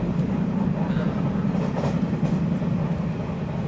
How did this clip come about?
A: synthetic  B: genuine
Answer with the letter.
B